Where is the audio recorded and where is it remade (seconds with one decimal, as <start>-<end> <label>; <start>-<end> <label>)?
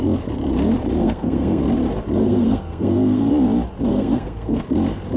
0.0-1.0 recorded; 1.0-1.6 remade; 1.6-2.2 recorded; 2.2-3.3 remade; 3.3-3.9 recorded; 3.9-4.6 remade; 4.6-5.2 recorded